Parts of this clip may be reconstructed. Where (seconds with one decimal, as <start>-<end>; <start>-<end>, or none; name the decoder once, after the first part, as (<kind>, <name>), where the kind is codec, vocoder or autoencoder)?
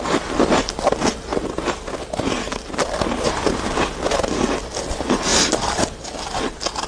none